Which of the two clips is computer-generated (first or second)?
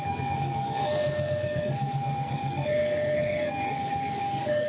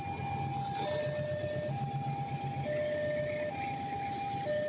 first